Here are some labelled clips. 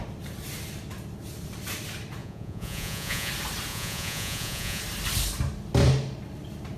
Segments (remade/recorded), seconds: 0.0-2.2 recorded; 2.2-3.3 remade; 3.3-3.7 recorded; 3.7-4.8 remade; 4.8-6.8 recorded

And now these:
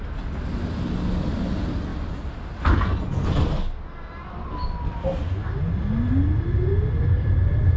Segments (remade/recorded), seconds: 0.0-7.8 recorded

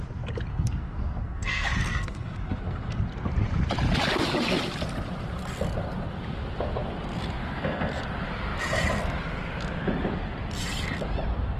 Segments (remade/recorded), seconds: 0.0-0.5 recorded; 0.5-3.0 remade; 3.0-7.4 recorded; 7.4-8.0 remade; 8.0-11.6 recorded

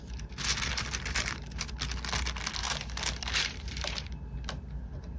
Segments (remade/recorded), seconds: 0.0-0.7 recorded; 0.7-1.7 remade; 1.7-2.6 recorded; 2.6-4.6 remade; 4.6-5.2 recorded

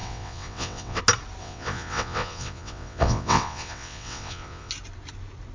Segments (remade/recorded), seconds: 0.0-1.0 remade; 1.0-1.4 recorded; 1.4-4.7 remade; 4.7-5.5 recorded

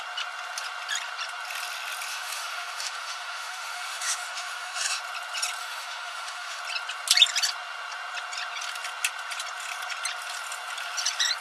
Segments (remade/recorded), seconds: 0.0-2.1 recorded; 2.1-5.0 remade; 5.0-5.6 recorded; 5.6-6.6 remade; 6.6-11.4 recorded